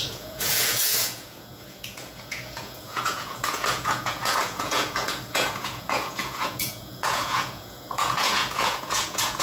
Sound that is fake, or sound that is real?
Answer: fake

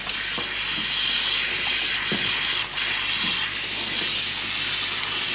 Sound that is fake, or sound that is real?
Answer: real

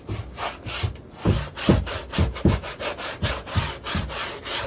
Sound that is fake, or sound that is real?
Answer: real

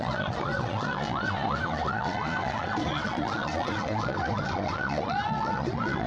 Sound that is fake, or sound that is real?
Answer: fake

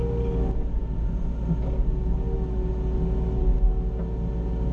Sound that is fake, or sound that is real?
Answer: real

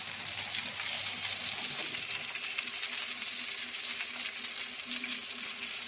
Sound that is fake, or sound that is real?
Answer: real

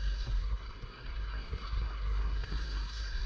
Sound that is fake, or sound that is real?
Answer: fake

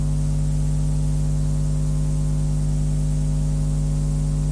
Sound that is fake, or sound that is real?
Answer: real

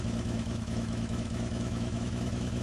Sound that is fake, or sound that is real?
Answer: fake